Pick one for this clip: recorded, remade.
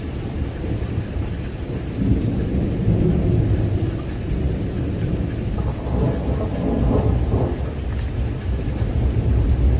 recorded